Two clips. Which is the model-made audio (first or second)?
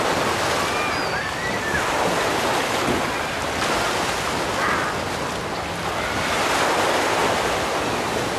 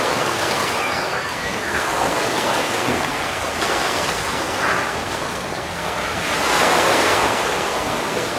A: second